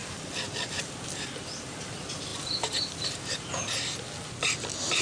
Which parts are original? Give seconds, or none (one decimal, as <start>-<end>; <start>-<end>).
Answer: 0.0-5.0